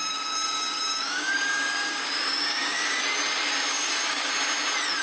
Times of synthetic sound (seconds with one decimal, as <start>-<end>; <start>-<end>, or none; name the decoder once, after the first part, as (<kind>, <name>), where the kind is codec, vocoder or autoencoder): 0.0-3.0 (codec, DAC); 3.7-4.3